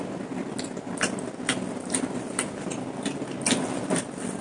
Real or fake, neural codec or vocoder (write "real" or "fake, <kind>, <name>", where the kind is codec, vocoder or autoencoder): real